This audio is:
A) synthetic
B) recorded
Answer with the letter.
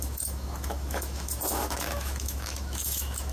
A